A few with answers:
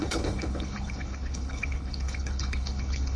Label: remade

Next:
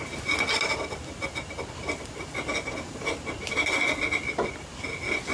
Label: recorded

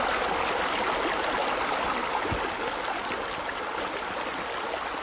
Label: recorded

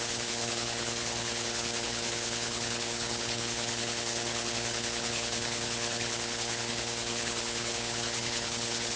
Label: remade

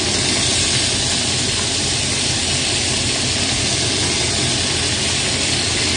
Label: recorded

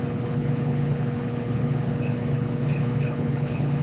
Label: remade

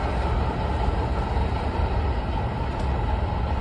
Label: recorded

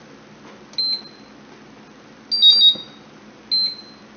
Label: recorded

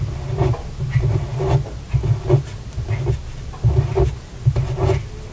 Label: recorded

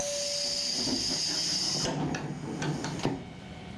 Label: recorded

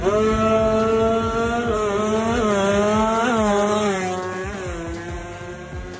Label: recorded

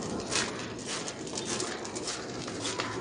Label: recorded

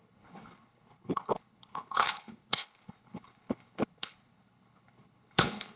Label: remade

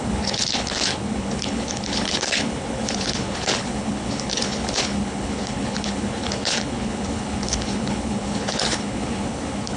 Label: remade